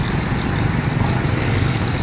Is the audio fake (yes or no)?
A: no